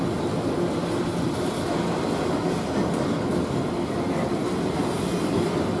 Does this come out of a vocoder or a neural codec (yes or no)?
no